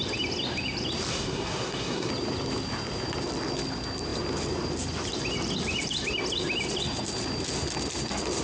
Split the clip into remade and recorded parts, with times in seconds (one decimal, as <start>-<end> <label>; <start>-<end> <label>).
0.0-1.1 recorded; 1.1-2.1 remade; 2.1-8.4 recorded